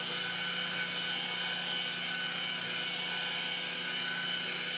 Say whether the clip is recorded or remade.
recorded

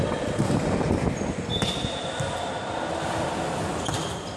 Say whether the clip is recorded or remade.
recorded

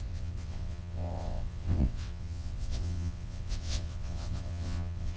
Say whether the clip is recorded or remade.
remade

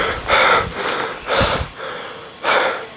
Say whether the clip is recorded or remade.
recorded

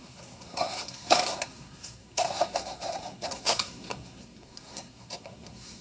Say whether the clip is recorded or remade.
remade